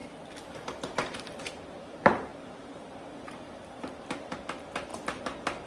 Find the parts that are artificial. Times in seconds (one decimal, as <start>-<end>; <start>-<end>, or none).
0.5-5.7